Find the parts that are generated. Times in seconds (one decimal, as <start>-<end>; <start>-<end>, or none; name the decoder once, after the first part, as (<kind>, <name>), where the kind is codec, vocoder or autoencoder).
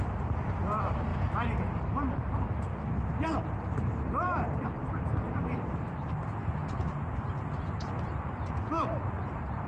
0.0-1.1 (vocoder, BigVGAN v2); 2.2-9.7